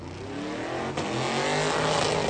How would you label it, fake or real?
real